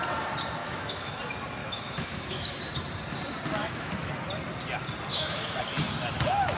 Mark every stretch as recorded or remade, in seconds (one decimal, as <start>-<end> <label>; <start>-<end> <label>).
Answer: 0.0-0.6 recorded; 0.6-1.2 remade; 1.2-1.6 recorded; 1.6-2.6 remade; 2.6-3.6 recorded; 3.6-4.1 remade; 4.1-5.1 recorded; 5.1-5.6 remade; 5.6-6.6 recorded

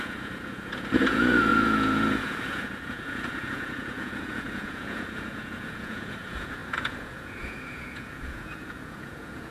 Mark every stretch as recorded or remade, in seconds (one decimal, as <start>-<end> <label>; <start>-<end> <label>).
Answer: 0.0-9.5 remade

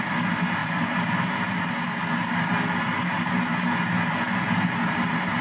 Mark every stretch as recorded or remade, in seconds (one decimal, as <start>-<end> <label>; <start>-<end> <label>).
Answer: 0.0-5.4 recorded